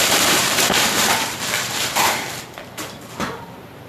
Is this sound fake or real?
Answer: fake